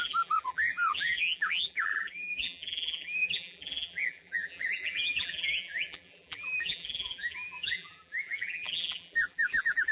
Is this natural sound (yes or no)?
no